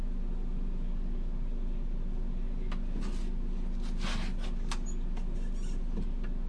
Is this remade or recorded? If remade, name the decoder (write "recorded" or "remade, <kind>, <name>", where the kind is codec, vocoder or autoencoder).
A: recorded